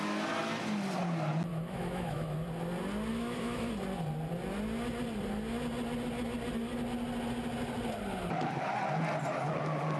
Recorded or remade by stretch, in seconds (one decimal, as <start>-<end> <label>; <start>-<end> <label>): 0.0-1.5 recorded; 1.5-2.5 remade; 2.5-3.1 recorded; 3.1-3.7 remade; 3.7-10.0 recorded